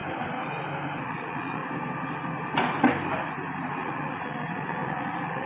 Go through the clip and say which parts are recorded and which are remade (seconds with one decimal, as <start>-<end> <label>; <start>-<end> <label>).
0.0-1.0 recorded; 1.0-1.6 remade; 1.6-3.8 recorded; 3.8-5.5 remade